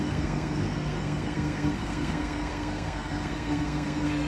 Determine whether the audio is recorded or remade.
remade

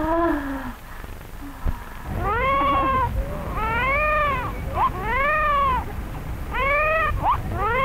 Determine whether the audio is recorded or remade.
recorded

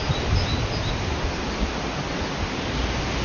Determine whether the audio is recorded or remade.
remade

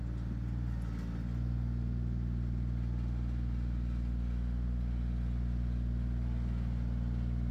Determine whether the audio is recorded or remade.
recorded